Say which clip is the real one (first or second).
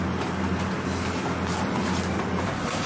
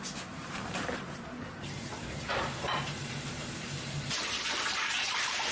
first